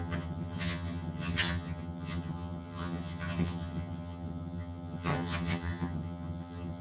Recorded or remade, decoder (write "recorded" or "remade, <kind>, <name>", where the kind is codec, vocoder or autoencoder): remade, vocoder, HiFi-GAN